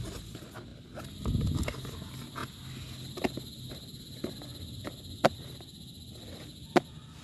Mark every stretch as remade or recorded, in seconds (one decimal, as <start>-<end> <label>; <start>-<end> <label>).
0.0-7.2 recorded